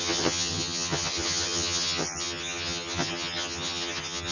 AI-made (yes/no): yes